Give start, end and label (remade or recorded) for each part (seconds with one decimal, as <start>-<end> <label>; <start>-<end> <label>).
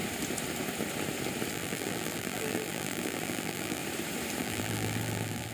0.0-1.5 recorded; 1.5-3.8 remade; 3.8-4.4 recorded; 4.4-5.5 remade